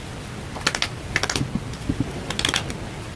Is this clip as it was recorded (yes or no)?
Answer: yes